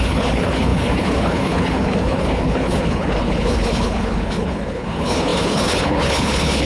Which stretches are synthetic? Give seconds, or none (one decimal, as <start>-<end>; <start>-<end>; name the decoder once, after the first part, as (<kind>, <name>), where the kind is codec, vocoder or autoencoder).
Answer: 0.0-6.6 (codec, HILCodec)